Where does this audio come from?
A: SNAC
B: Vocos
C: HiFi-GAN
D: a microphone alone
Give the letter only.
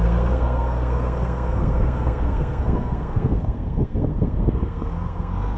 A